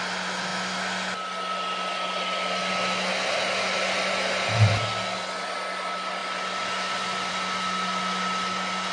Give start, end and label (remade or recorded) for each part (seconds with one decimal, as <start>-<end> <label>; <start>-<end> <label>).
0.0-8.9 recorded